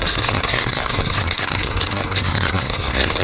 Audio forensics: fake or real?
fake